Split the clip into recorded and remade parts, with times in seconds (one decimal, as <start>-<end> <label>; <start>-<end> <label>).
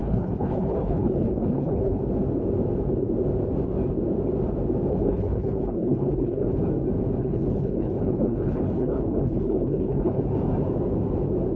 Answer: 0.0-2.0 remade; 2.0-4.9 recorded; 4.9-6.6 remade; 6.6-7.2 recorded; 7.2-10.2 remade; 10.2-11.6 recorded